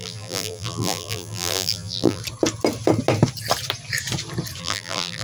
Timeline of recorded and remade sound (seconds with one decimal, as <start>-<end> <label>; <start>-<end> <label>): 0.0-2.2 remade; 2.2-4.6 recorded; 4.6-5.2 remade